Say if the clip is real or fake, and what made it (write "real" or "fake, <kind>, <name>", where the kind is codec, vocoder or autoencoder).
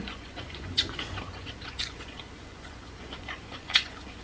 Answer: fake, vocoder, Vocos